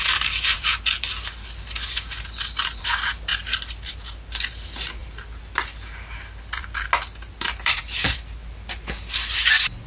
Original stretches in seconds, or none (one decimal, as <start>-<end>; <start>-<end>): 0.7-2.8; 8.4-9.2